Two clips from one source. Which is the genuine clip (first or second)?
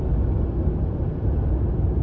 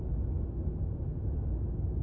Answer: second